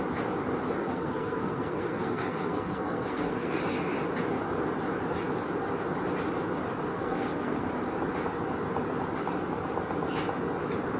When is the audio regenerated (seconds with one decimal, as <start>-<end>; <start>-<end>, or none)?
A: 0.8-3.6; 6.9-7.7